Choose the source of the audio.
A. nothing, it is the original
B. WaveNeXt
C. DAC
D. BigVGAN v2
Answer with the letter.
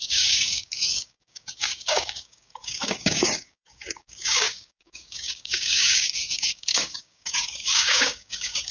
C